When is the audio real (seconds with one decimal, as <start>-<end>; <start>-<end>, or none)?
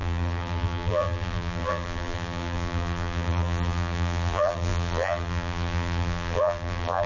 none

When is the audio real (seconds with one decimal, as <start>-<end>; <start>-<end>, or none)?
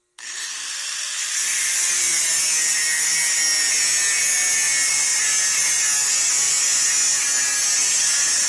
0.0-1.2; 2.2-8.5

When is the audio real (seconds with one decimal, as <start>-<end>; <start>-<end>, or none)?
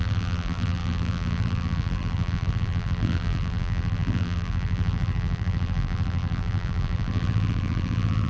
none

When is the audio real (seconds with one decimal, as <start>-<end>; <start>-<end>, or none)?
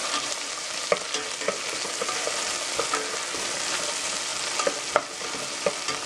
0.7-6.1